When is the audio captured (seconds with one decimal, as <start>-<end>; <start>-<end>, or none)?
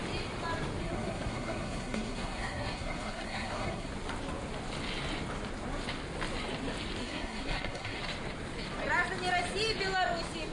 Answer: 0.0-0.8; 3.9-7.0; 8.0-10.5